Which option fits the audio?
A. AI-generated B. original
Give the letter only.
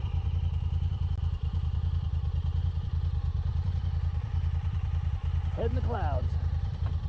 A